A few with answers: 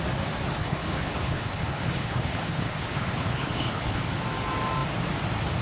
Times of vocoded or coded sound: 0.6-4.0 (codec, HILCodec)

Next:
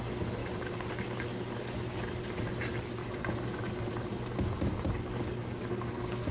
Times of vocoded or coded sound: 5.7-6.3 (codec, SNAC)

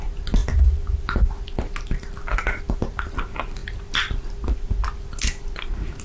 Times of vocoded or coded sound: none

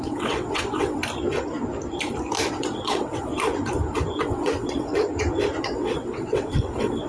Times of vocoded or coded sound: 0.0-1.0 (vocoder, WaveNeXt); 2.5-3.3; 4.2-4.9; 5.6-7.1